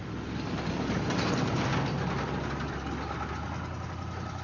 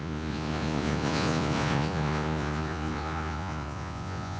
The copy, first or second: second